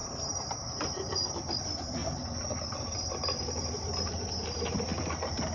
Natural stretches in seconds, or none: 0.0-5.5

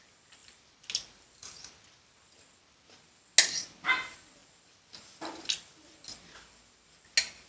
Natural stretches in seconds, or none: 0.0-7.5

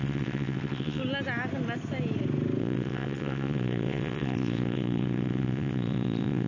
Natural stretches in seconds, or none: 1.0-2.6